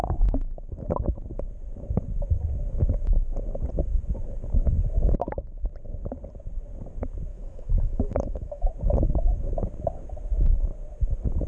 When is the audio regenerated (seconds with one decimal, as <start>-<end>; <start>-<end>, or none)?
7.3-8.7